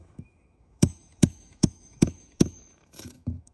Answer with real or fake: fake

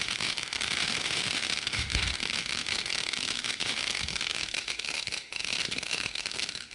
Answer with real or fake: fake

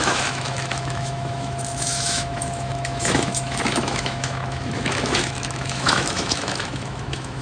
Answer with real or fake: fake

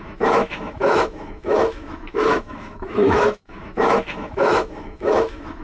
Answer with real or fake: fake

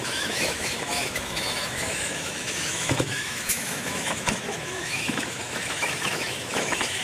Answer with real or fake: fake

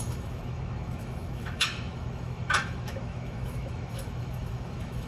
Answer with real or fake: fake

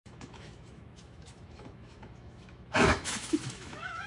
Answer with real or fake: fake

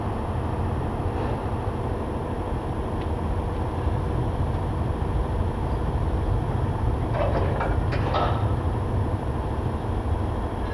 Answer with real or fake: real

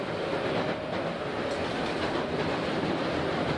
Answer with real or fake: real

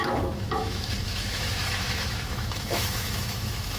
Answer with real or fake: fake